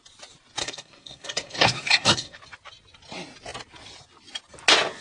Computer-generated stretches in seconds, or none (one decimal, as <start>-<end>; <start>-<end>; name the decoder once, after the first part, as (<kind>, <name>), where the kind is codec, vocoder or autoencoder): 0.6-2.4 (codec, SNAC)